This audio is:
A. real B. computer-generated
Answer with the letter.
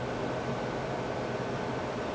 A